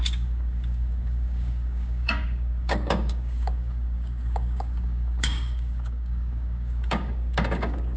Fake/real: fake